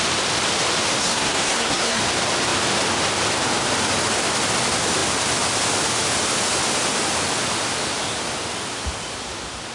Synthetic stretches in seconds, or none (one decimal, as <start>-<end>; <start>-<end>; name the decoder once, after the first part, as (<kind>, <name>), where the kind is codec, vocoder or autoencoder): 1.0-2.0 (codec, SNAC)